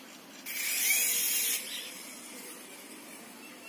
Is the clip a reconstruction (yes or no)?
no